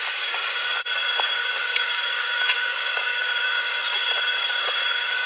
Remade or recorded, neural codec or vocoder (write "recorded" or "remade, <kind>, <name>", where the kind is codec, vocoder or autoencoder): remade, codec, DAC